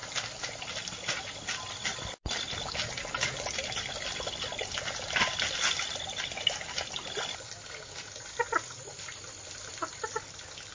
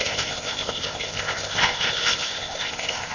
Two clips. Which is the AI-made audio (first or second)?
second